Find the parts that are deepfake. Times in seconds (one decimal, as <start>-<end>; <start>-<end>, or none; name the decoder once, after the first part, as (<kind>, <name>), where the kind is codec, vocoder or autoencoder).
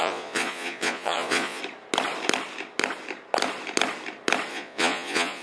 0.0-1.6 (vocoder, Vocos); 4.5-5.4